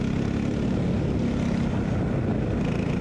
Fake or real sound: real